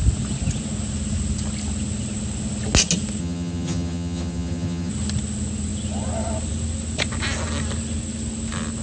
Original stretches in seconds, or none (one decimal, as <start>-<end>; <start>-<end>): 0.0-3.2; 4.9-8.8